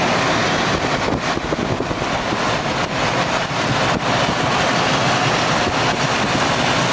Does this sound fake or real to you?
real